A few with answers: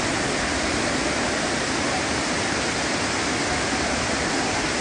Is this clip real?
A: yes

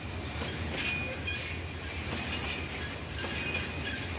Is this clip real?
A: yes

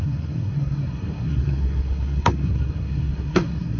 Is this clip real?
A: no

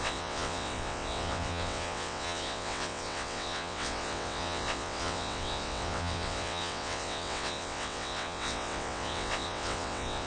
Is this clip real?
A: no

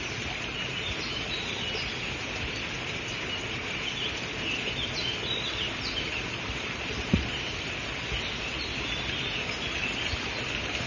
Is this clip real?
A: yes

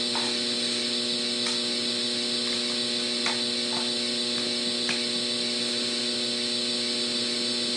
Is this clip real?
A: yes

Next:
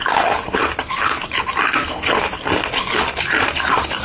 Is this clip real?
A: yes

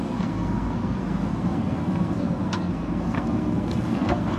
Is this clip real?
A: no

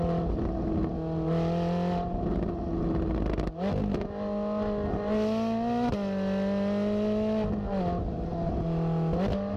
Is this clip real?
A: yes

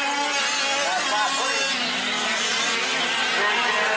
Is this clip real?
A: yes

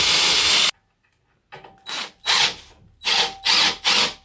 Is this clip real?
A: yes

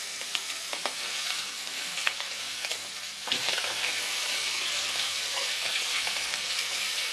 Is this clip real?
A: no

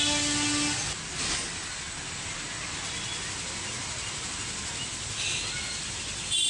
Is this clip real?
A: yes